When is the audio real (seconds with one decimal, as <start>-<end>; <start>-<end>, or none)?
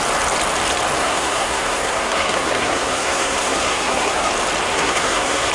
0.0-1.0; 4.3-4.7